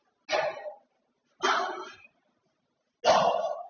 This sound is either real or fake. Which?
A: real